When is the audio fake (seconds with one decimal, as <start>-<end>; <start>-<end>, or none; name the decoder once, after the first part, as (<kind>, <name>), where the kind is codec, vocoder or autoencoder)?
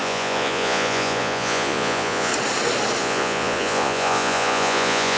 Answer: 0.0-2.3 (vocoder, Vocos); 3.0-5.2